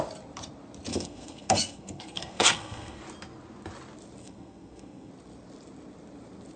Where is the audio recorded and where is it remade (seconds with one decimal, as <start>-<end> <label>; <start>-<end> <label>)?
0.0-0.9 recorded; 0.9-3.0 remade; 3.0-4.2 recorded; 4.2-5.1 remade; 5.1-6.6 recorded